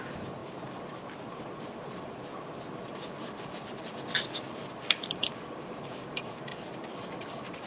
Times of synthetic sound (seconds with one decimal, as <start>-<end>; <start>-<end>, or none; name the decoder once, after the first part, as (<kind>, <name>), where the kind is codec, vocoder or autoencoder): none